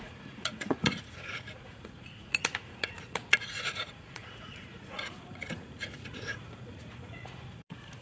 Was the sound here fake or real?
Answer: fake